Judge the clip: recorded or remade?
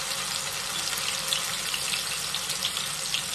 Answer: recorded